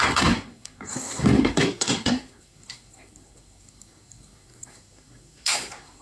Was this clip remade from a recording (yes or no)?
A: yes